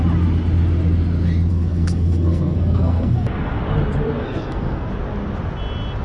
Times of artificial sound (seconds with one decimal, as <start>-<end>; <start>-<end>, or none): 1.5-3.6; 4.2-4.9